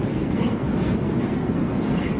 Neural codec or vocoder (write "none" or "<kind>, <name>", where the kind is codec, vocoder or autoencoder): codec, SNAC